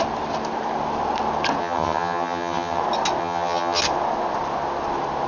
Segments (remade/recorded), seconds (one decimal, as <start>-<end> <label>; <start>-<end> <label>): 0.0-1.6 recorded; 1.6-2.8 remade; 2.8-3.2 recorded; 3.2-3.8 remade; 3.8-5.3 recorded